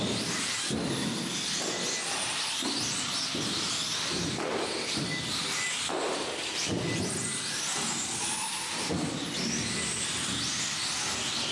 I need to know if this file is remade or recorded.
recorded